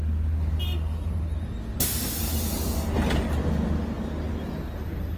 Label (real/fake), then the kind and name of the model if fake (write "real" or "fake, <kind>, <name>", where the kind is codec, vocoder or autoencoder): real